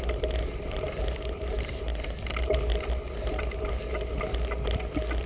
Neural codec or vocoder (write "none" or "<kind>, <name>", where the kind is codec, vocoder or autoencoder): none